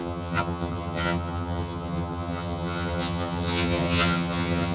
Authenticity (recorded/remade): remade